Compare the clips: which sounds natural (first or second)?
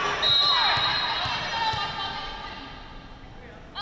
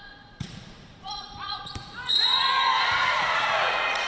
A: first